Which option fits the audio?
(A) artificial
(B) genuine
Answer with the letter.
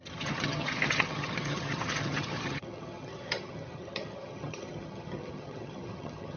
A